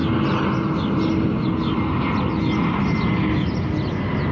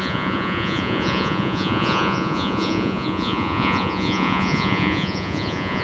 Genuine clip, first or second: first